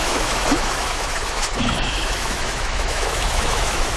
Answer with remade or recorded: remade